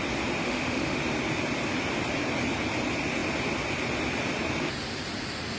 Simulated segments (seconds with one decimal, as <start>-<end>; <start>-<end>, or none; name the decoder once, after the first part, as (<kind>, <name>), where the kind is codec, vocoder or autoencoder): 0.4-1.0 (autoencoder, DAC-VAE)